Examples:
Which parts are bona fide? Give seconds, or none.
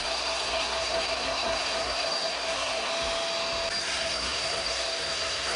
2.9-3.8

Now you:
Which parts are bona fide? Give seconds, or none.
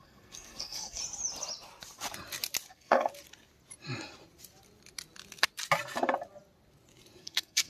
1.0-2.7; 3.1-7.2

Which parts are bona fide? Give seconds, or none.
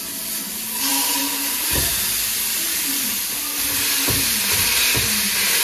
0.0-5.6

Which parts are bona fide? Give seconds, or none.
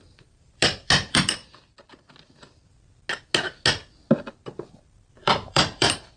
1.4-5.1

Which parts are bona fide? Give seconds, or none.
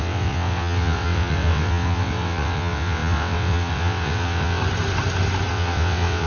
4.6-5.5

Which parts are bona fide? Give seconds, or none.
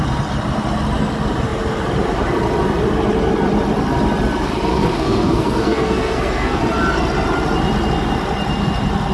0.0-4.7; 6.6-9.1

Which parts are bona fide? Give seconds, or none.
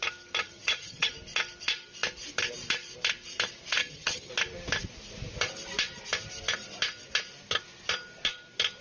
0.0-0.4; 1.1-3.8; 4.3-8.8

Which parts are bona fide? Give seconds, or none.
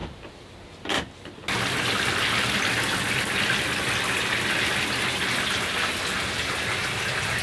0.0-7.4